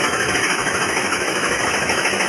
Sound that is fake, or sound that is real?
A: fake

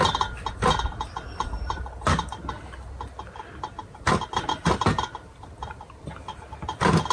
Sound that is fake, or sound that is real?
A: real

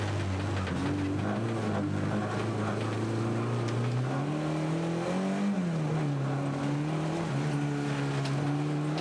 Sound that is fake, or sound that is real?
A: real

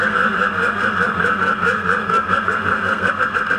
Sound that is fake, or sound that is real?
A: fake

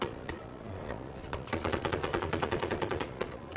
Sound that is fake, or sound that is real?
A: fake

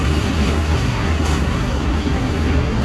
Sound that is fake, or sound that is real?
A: fake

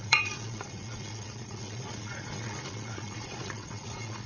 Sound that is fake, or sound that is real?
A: fake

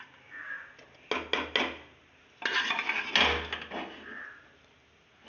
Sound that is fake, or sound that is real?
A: real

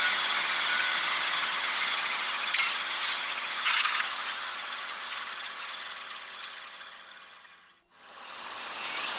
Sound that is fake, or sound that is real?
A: fake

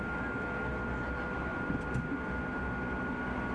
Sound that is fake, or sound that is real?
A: real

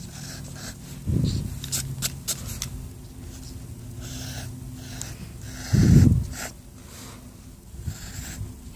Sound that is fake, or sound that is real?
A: real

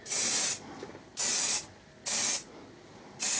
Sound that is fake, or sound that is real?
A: real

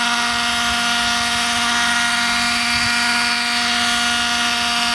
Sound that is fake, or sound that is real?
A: real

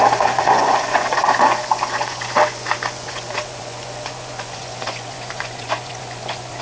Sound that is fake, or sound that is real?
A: fake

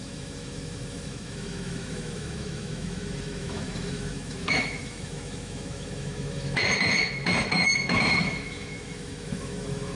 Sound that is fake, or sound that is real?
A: fake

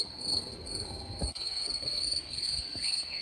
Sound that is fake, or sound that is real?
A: fake